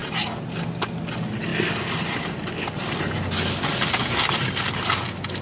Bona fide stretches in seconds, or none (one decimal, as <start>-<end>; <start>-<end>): 0.0-5.4